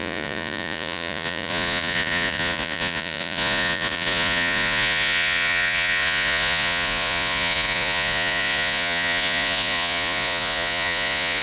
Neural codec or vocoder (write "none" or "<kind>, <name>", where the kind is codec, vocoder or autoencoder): vocoder, Vocos